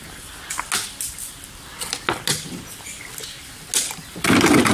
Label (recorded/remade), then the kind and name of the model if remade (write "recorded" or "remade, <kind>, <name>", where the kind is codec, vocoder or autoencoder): recorded